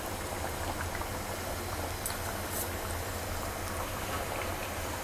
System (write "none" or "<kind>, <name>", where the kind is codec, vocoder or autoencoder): none